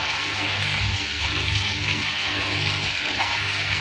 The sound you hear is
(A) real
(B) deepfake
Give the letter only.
B